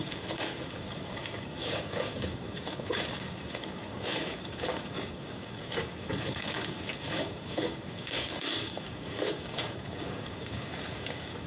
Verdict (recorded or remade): remade